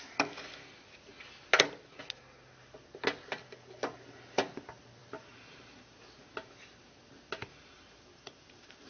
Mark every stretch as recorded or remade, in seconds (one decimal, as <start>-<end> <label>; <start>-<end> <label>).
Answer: 0.0-5.0 recorded; 5.0-6.2 remade; 6.2-7.4 recorded; 7.4-8.9 remade